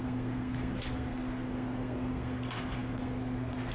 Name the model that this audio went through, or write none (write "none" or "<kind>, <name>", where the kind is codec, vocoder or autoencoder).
codec, SNAC